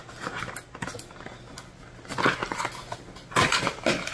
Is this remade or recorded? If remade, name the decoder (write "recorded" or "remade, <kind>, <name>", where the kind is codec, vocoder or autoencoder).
recorded